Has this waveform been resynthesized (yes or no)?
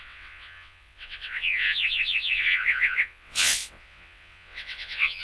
yes